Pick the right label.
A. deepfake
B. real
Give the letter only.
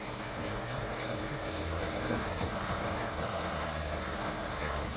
A